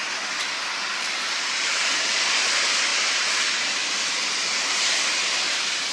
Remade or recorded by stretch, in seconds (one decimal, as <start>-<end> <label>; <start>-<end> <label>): 0.0-0.9 recorded; 0.9-1.8 remade; 1.8-2.9 recorded; 2.9-3.8 remade; 3.8-5.9 recorded